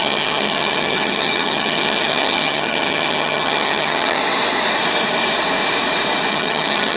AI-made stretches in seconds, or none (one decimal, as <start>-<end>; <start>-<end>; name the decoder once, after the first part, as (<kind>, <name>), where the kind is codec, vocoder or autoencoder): 0.0-4.2 (vocoder, HiFi-GAN); 6.3-7.0